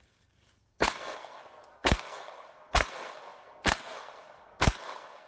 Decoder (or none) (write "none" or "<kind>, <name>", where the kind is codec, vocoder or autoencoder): codec, SNAC